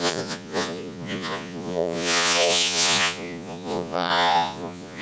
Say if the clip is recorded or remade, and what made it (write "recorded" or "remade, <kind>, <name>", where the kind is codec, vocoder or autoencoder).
remade, vocoder, Vocos